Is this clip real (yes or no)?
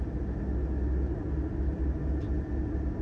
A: yes